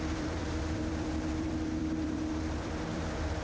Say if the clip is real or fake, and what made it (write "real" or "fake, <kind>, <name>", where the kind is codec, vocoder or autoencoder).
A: fake, vocoder, BigVGAN v2